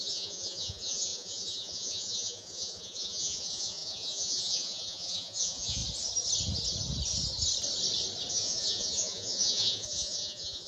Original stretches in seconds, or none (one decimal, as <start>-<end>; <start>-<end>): 5.8-8.3